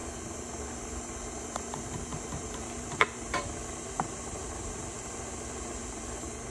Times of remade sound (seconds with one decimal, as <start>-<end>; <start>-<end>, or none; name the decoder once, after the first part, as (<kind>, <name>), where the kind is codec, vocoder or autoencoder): 0.0-6.5 (vocoder, BigVGAN v2)